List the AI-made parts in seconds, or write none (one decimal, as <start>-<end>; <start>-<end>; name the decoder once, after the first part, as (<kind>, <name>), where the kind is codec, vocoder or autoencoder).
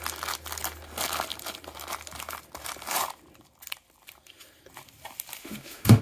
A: 5.4-6.0 (autoencoder, DAC-VAE)